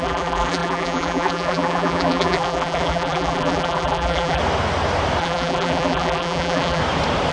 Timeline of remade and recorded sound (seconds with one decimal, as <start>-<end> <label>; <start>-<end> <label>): 0.0-4.4 remade; 4.4-5.2 recorded; 5.2-6.8 remade; 6.8-7.3 recorded